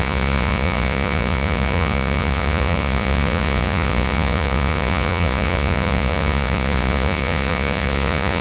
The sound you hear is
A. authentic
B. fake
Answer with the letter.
B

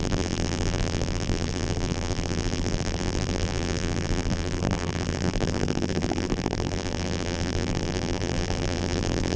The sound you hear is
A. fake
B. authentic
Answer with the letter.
A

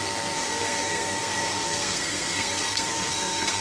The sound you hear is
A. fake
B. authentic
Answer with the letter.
A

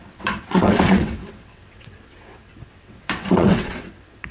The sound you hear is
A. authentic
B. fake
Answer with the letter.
B